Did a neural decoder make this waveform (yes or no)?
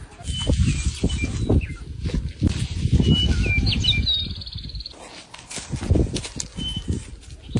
no